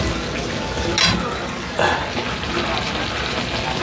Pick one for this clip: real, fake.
real